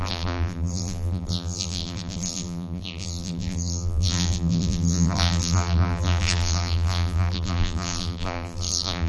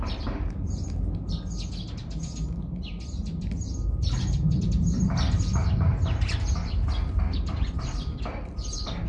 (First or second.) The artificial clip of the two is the first